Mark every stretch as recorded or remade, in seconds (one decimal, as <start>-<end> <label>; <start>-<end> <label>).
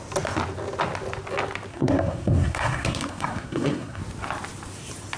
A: 0.0-1.7 recorded; 1.7-4.0 remade; 4.0-5.2 recorded